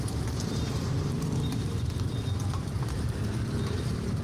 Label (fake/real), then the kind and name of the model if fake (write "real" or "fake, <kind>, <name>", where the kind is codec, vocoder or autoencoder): fake, vocoder, BigVGAN v2